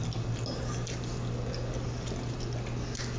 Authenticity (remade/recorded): recorded